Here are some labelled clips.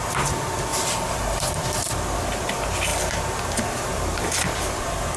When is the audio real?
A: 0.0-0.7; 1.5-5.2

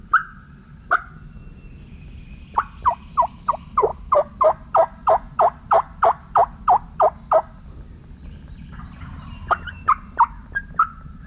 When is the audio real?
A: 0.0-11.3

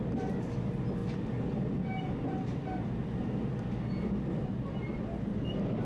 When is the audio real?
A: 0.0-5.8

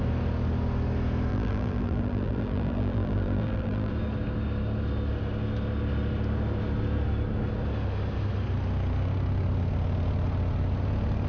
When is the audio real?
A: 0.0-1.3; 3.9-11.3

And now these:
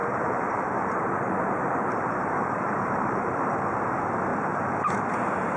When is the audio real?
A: 3.4-4.3; 5.1-5.6

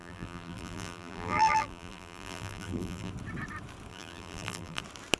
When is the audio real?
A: 3.1-3.9; 4.8-5.2